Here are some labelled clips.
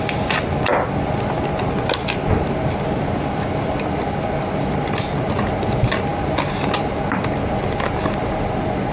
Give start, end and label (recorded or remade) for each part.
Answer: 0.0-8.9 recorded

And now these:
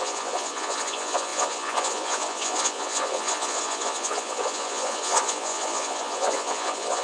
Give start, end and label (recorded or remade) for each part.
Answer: 0.0-7.0 remade

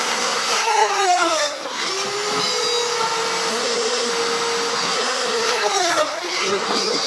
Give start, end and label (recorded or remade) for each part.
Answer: 0.0-1.9 remade; 1.9-3.5 recorded; 3.5-4.1 remade; 4.1-4.7 recorded; 4.7-7.1 remade